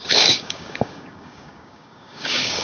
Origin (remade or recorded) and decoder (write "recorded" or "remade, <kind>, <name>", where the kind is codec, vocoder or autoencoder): remade, codec, DAC